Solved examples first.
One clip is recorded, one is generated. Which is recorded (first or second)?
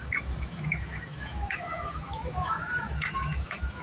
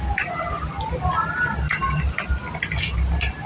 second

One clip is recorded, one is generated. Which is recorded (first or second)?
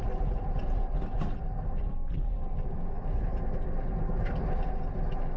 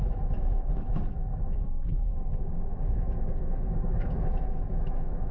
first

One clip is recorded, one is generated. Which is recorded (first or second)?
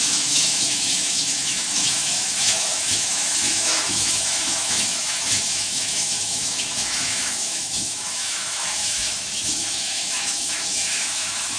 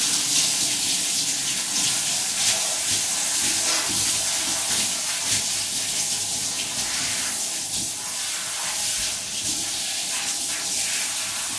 second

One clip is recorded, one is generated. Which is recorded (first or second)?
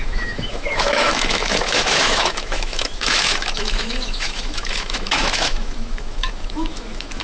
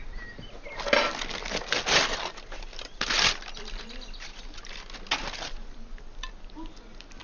second